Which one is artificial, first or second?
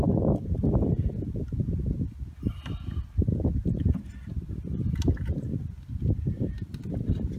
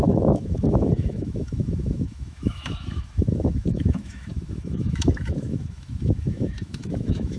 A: second